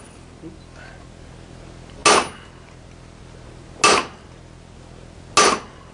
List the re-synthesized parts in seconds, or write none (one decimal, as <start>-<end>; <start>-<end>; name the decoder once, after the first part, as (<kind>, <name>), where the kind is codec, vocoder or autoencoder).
none